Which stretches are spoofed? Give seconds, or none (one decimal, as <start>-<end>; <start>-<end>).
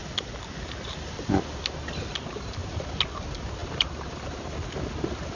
3.6-4.6